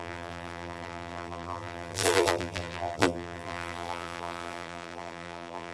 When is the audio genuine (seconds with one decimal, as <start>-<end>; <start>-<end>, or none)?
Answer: none

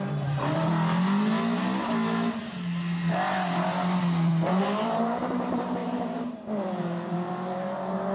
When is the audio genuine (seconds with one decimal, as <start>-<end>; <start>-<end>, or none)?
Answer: 0.7-2.4; 3.0-4.6